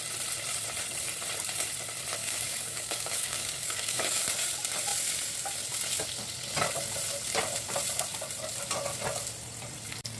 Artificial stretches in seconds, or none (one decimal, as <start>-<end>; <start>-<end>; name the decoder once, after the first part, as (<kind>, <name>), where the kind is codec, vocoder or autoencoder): 2.2-4.2 (codec, DAC)